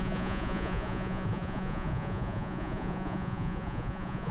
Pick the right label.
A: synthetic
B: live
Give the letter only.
A